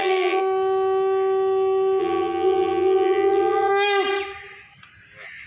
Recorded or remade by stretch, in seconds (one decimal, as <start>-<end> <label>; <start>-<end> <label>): 0.0-0.4 remade; 0.4-2.0 recorded; 2.0-3.7 remade; 3.7-5.5 recorded